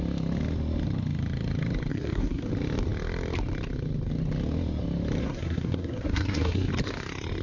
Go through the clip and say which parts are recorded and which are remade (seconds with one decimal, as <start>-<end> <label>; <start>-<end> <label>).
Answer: 0.0-1.9 recorded; 1.9-2.5 remade; 2.5-5.2 recorded; 5.2-6.7 remade; 6.7-7.4 recorded